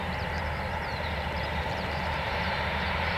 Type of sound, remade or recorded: remade